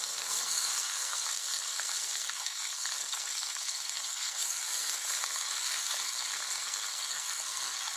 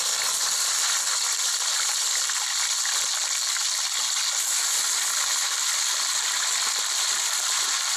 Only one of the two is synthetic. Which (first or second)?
first